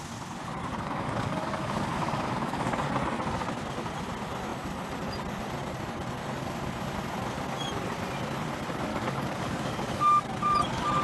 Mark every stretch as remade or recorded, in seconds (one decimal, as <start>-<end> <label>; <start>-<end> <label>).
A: 0.0-0.7 recorded; 0.7-2.9 remade; 2.9-8.9 recorded; 8.9-10.0 remade; 10.0-11.0 recorded